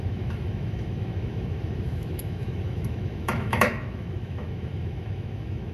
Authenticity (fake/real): fake